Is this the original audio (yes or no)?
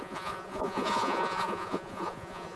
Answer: no